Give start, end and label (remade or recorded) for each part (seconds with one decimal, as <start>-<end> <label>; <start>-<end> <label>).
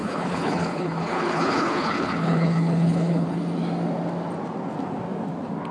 0.0-3.4 remade; 3.4-5.7 recorded